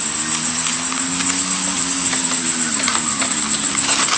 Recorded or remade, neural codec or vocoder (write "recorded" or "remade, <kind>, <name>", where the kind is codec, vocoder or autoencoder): recorded